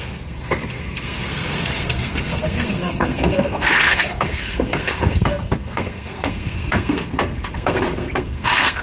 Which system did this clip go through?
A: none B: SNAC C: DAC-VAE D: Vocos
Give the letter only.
B